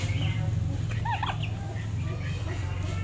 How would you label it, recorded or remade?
recorded